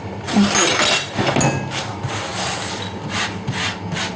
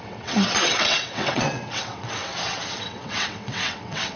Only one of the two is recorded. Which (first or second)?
first